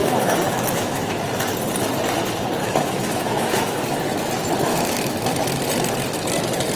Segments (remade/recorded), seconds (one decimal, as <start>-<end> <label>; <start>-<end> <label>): 0.0-1.2 remade; 1.2-2.6 recorded; 2.6-3.8 remade; 3.8-4.7 recorded; 4.7-5.3 remade; 5.3-6.8 recorded

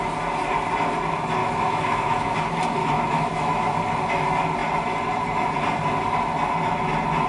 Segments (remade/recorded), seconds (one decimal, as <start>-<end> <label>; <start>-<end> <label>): 0.0-1.4 recorded; 1.4-2.4 remade; 2.4-2.8 recorded; 2.8-3.8 remade; 3.8-7.3 recorded